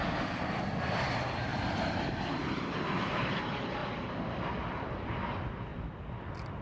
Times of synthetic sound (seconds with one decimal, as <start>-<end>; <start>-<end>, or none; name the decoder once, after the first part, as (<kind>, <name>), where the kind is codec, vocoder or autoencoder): 1.5-2.5 (vocoder, BigVGAN v2); 3.8-4.4; 5.7-6.6